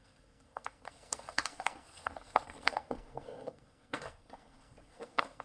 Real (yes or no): no